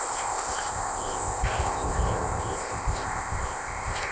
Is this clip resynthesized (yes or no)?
yes